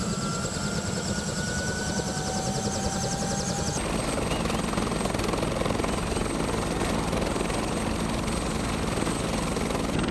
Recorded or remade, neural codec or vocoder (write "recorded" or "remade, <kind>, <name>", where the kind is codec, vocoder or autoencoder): recorded